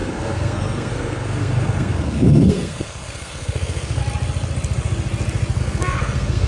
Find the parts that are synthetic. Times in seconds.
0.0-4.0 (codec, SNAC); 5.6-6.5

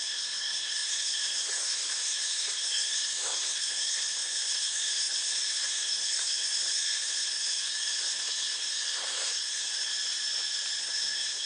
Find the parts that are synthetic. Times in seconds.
0.0-9.9 (codec, SNAC); 10.8-11.5

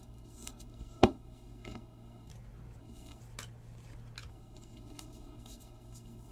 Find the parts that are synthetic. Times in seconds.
0.0-2.3 (codec, SNAC); 2.8-3.2; 4.3-6.3

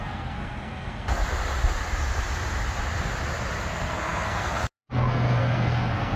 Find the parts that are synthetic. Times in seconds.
0.0-1.2 (codec, SNAC); 3.6-6.2

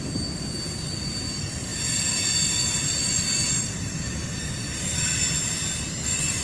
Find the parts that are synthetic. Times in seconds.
none